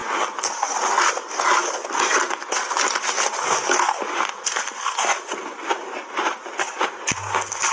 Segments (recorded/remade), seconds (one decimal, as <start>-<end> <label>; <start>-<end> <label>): 0.0-7.7 recorded